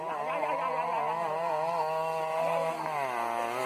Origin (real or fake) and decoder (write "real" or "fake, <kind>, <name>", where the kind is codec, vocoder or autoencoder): real